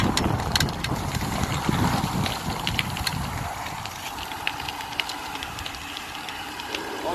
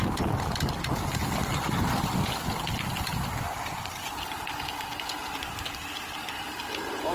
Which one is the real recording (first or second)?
second